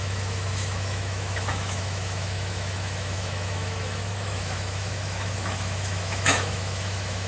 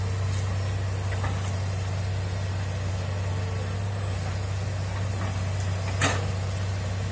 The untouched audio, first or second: second